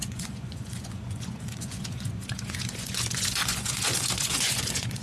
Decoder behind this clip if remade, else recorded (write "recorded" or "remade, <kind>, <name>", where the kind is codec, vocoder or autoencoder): remade, vocoder, Vocos